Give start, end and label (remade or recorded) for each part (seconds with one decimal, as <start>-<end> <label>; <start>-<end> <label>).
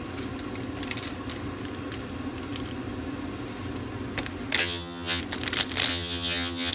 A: 0.0-4.6 recorded; 4.6-5.2 remade; 5.2-5.9 recorded; 5.9-6.7 remade